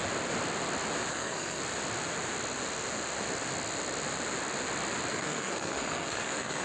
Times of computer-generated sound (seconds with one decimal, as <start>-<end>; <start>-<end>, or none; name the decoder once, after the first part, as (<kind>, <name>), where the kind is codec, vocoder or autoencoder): 1.1-1.6 (codec, SNAC); 5.1-6.6